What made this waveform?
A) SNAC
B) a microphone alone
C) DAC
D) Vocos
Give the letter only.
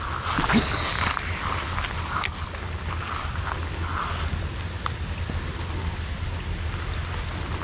B